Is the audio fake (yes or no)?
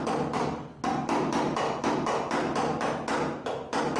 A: no